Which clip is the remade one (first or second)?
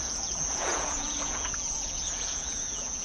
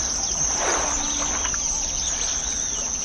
first